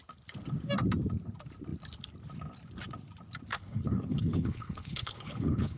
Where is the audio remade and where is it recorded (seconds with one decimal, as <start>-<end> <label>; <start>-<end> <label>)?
0.0-3.5 recorded; 3.5-5.8 remade